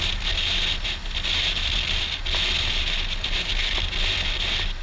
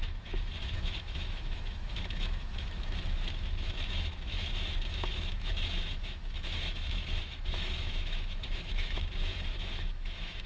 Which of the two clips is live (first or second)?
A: first